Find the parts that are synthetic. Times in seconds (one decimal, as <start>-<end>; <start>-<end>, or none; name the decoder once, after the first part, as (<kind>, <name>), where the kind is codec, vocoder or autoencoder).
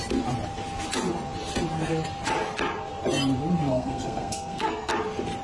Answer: 3.7-4.9 (codec, SNAC)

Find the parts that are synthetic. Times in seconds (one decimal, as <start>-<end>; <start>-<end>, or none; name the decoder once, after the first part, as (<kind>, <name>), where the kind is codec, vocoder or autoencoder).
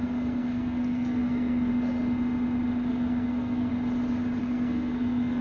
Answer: 0.0-1.7 (codec, SNAC); 2.9-3.7; 4.4-5.4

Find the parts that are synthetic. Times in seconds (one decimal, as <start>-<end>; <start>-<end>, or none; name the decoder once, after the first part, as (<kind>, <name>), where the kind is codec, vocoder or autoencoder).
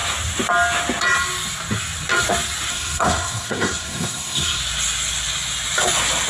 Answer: 2.7-4.6 (codec, SNAC)